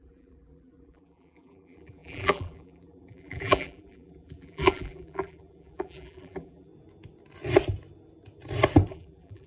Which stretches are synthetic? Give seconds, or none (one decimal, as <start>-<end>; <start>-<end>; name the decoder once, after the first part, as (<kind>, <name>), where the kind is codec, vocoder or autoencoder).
0.0-6.7 (vocoder, BigVGAN v2); 8.9-9.5